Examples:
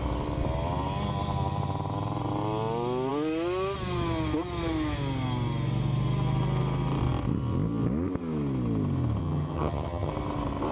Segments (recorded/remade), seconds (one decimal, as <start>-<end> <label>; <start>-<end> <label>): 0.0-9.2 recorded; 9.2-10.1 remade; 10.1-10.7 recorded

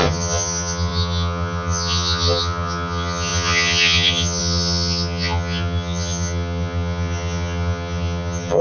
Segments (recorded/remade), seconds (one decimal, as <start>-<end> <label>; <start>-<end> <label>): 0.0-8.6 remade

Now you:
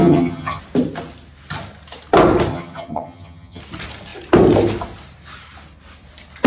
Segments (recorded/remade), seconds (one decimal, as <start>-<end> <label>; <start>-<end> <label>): 0.0-0.6 remade; 0.6-2.5 recorded; 2.5-3.6 remade; 3.6-6.5 recorded

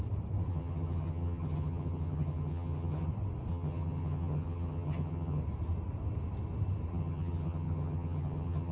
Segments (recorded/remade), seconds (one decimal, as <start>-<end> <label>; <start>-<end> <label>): 0.0-0.5 recorded; 0.5-3.1 remade; 3.1-3.5 recorded; 3.5-5.4 remade; 5.4-6.9 recorded; 6.9-8.7 remade

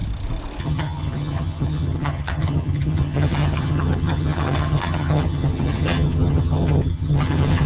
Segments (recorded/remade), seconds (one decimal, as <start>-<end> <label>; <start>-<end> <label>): 0.0-0.6 recorded; 0.6-7.7 remade

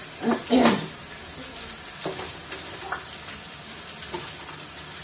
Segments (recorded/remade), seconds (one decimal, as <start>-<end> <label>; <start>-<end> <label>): 0.0-5.0 recorded